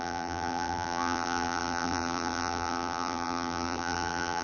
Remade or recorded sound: remade